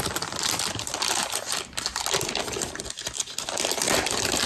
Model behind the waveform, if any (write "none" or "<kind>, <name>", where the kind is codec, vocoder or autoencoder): none